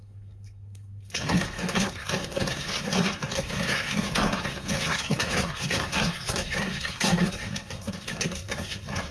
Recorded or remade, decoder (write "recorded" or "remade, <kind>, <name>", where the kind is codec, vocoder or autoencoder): remade, codec, SNAC